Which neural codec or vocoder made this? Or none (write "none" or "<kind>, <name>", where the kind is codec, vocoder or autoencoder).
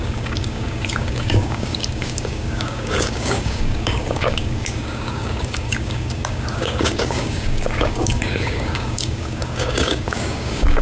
codec, DAC